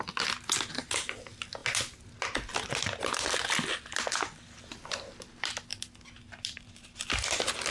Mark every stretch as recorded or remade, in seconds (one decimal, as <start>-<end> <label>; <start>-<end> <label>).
0.0-7.7 recorded